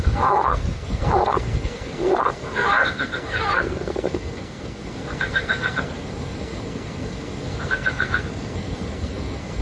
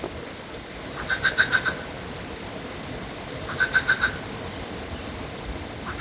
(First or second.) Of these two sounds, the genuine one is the second